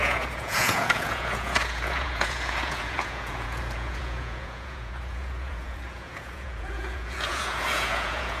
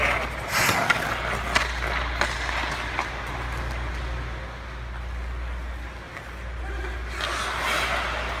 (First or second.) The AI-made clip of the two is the first